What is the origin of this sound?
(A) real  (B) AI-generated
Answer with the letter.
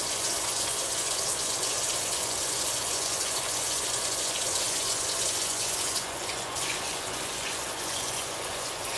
B